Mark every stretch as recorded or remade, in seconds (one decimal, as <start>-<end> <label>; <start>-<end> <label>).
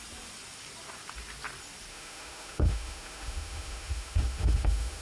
0.0-1.9 recorded; 1.9-5.0 remade